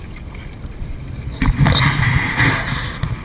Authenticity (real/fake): real